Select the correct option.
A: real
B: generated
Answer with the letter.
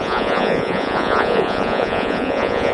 B